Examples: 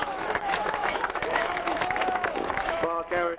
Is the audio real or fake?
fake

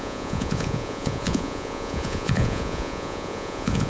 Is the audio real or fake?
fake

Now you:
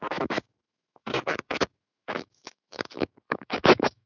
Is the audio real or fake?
fake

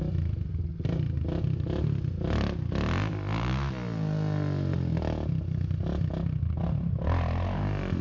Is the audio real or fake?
real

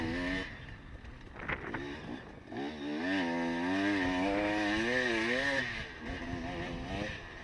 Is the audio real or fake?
real